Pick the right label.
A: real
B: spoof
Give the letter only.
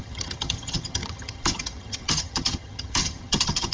B